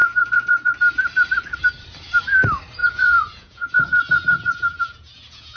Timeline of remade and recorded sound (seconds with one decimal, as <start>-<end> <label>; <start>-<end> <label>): 0.0-0.7 remade; 0.7-2.8 recorded; 2.8-5.6 remade